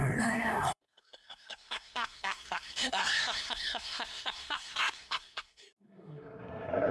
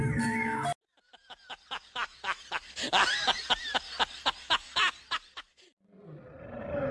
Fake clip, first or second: first